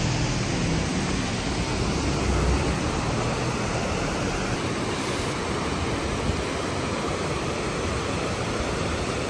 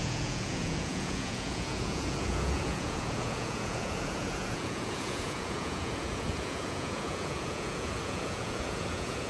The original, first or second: first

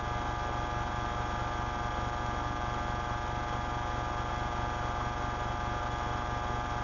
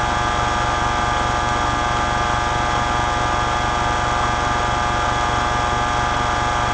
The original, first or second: second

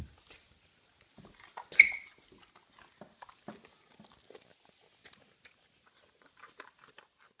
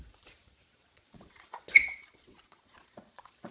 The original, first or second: first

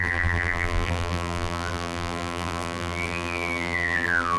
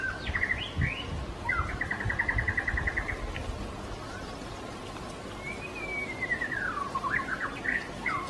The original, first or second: second